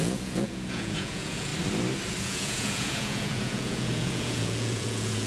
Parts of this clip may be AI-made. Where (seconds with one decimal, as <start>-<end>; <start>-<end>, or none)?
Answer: 0.0-1.5; 2.2-5.3

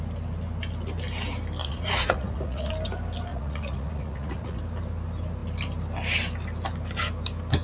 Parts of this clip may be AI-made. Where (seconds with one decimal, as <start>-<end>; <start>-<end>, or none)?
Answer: 1.6-2.7; 3.3-4.6

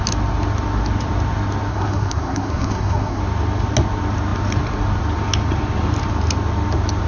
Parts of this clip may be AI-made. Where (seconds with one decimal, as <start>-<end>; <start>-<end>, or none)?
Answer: 1.7-3.2

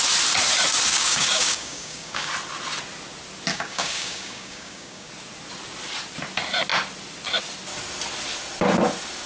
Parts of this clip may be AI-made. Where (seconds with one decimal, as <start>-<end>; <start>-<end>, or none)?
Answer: 0.9-2.3; 3.5-5.1

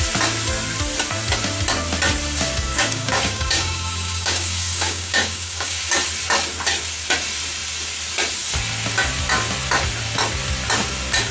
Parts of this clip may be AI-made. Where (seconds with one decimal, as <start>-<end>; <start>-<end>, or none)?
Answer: 2.7-5.9